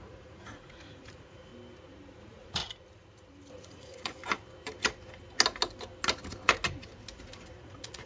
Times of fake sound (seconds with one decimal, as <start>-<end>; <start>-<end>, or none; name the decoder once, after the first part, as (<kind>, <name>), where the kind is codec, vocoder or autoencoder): 0.0-1.5 (vocoder, Vocos); 2.2-2.6; 3.5-4.2; 7.6-8.1